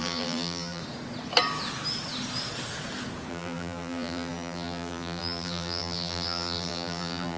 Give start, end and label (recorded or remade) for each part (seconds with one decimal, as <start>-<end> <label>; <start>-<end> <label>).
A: 0.0-0.8 remade; 0.8-3.3 recorded; 3.3-7.4 remade